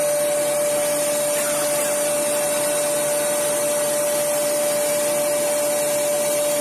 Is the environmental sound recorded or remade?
recorded